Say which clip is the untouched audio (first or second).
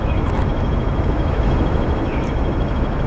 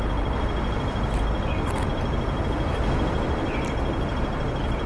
second